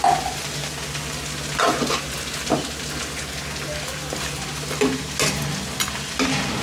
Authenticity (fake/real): real